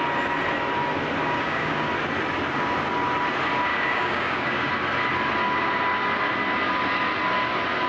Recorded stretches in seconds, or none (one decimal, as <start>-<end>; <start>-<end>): 0.0-1.2; 1.9-3.7; 4.7-7.9